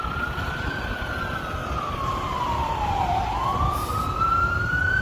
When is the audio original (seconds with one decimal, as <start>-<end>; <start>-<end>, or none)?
0.0-5.0